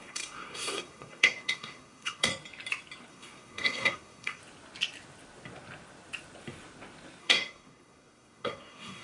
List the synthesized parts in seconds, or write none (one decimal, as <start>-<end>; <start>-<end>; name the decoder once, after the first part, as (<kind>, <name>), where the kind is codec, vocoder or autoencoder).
0.0-2.3 (codec, SNAC); 3.1-4.4; 7.2-9.0